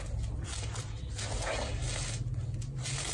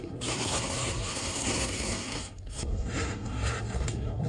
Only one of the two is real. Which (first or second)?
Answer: first